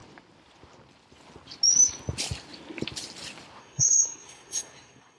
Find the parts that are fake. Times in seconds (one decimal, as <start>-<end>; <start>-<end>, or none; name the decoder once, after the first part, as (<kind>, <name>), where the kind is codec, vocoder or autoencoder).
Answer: 3.6-5.2 (codec, SNAC)